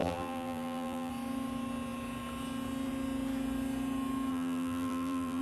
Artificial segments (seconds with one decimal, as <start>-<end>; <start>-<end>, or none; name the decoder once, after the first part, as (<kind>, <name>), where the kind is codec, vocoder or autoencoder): 0.0-1.1 (vocoder, BigVGAN v2); 4.3-5.4